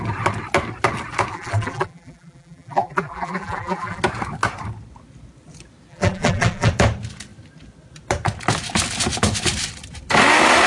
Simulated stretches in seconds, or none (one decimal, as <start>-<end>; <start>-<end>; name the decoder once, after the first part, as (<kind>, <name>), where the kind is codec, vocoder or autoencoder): 1.3-4.0 (vocoder, BigVGAN v2); 5.9-6.7